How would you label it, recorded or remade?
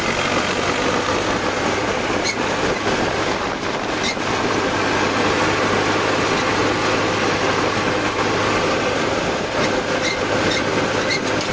recorded